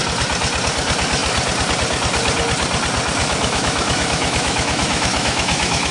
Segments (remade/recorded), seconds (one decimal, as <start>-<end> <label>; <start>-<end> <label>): 0.0-3.2 recorded; 3.2-5.9 remade